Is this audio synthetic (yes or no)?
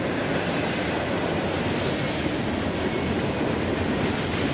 no